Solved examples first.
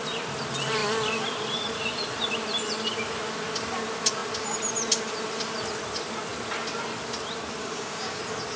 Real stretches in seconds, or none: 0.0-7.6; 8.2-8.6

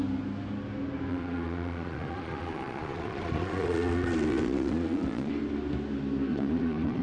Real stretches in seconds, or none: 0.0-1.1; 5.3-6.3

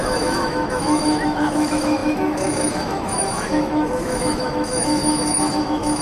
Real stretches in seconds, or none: none

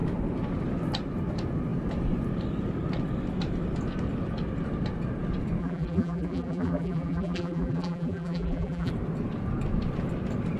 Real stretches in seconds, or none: 0.0-5.6; 8.9-10.6

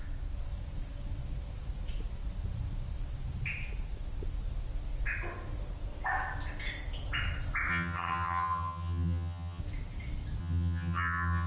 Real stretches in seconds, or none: 0.0-7.7; 9.6-10.4

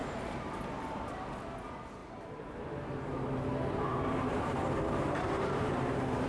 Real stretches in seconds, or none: 1.3-2.0; 2.6-3.9

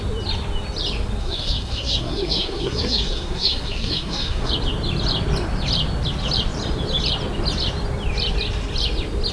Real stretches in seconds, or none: 0.0-1.2; 4.5-9.3

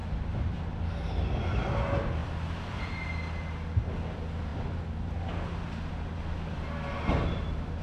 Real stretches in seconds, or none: 0.6-2.2; 2.9-7.8